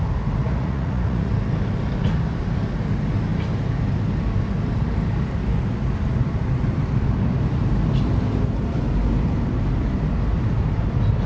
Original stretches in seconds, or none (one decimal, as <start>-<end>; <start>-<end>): 0.0-0.4; 1.3-11.3